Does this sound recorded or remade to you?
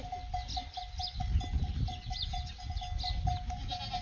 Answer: recorded